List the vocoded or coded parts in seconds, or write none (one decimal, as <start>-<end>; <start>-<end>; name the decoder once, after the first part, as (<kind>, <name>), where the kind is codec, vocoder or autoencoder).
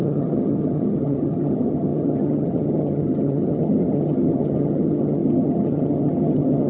0.0-6.7 (vocoder, HiFi-GAN)